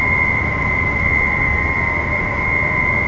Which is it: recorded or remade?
recorded